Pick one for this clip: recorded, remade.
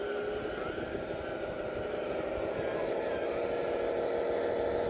recorded